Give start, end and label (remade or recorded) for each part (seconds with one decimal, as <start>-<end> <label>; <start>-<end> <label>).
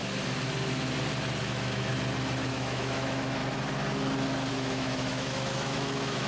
0.0-1.4 recorded; 1.4-1.9 remade; 1.9-2.5 recorded; 2.5-3.4 remade; 3.4-4.5 recorded; 4.5-6.3 remade